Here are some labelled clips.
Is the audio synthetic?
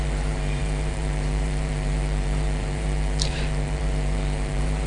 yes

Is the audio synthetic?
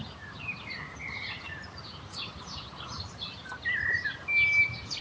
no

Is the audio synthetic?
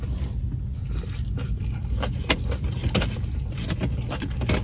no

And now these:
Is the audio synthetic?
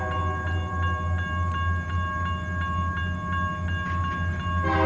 no